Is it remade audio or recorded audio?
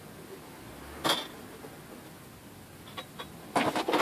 recorded